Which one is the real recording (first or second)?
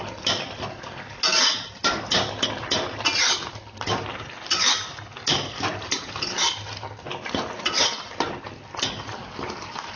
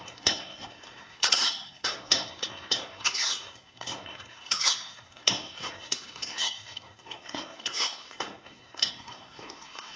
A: first